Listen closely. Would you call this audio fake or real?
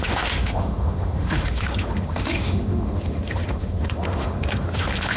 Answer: fake